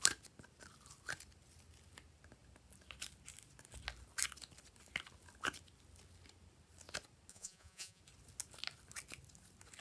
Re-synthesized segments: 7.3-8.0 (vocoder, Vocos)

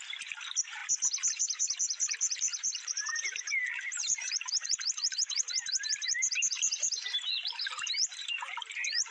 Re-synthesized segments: 0.0-0.8 (vocoder, BigVGAN v2); 1.3-9.1